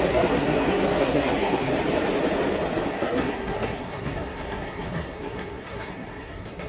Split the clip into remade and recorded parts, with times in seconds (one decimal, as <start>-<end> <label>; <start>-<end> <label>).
0.0-1.7 remade; 1.7-2.9 recorded; 2.9-6.7 remade